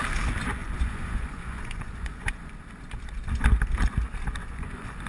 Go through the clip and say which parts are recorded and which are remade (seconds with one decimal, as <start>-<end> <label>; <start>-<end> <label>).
0.0-0.6 recorded; 0.6-2.5 remade; 2.5-4.4 recorded; 4.4-5.1 remade